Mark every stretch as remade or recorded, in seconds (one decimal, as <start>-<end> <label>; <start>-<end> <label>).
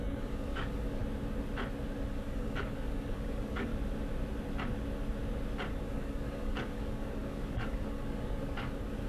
0.0-1.0 remade; 1.0-2.1 recorded; 2.1-3.7 remade; 3.7-5.7 recorded; 5.7-9.1 remade